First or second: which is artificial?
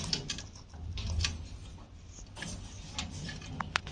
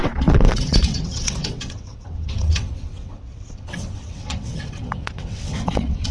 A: second